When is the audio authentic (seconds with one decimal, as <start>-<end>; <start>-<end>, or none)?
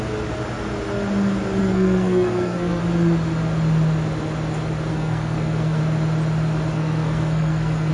0.0-1.6; 2.8-4.9; 5.8-6.7